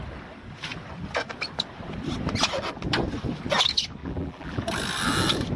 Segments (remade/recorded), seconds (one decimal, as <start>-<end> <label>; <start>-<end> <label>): 0.0-4.0 recorded; 4.0-4.6 remade; 4.6-5.6 recorded